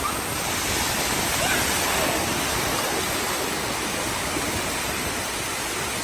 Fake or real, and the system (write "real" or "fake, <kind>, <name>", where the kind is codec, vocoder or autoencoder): real